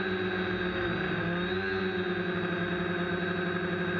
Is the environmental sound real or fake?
real